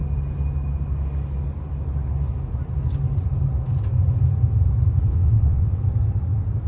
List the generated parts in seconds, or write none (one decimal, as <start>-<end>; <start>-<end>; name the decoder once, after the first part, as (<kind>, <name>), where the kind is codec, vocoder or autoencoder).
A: 5.1-5.8 (vocoder, WaveNeXt)